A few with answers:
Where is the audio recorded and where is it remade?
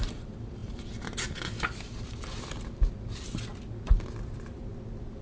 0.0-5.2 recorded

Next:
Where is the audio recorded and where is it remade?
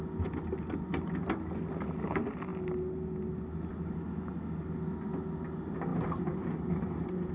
0.0-5.9 recorded; 5.9-7.3 remade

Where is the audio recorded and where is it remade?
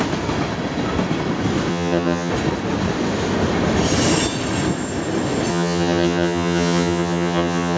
0.0-1.7 recorded; 1.7-2.3 remade; 2.3-5.5 recorded; 5.5-7.8 remade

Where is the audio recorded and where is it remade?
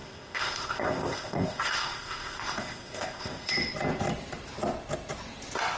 0.0-3.5 remade; 3.5-5.8 recorded